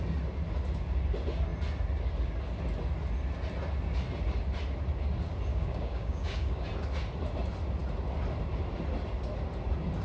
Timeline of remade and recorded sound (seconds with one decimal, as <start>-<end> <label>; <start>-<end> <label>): 0.0-5.5 recorded; 5.5-6.6 remade; 6.6-10.0 recorded